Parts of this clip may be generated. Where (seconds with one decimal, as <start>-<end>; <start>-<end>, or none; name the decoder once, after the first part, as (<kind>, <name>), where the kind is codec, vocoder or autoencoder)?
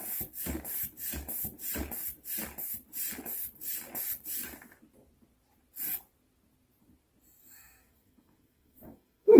7.4-9.4 (codec, SNAC)